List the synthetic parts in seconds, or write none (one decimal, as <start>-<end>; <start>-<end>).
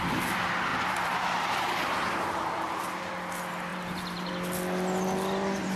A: 0.7-3.1; 3.7-4.3